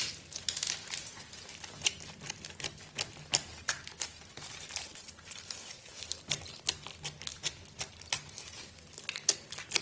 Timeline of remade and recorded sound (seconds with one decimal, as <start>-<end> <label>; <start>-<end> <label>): 0.0-7.3 recorded; 7.3-7.9 remade; 7.9-9.8 recorded